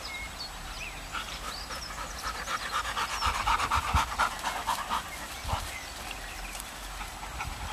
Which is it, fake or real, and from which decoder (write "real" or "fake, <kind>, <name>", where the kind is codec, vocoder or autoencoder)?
real